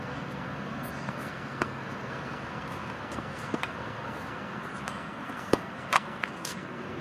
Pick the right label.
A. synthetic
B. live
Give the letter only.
A